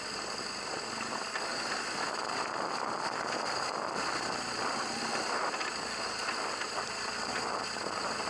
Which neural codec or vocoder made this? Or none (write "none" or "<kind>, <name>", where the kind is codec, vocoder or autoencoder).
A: none